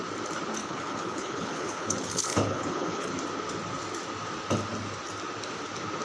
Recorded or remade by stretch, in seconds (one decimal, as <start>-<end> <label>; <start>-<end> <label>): 0.0-0.6 recorded; 0.6-3.1 remade; 3.1-6.0 recorded